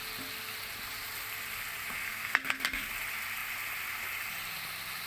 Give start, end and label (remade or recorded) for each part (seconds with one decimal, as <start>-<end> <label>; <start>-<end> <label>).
0.0-2.1 recorded; 2.1-2.9 remade; 2.9-5.1 recorded